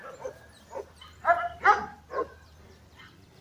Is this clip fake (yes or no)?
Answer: no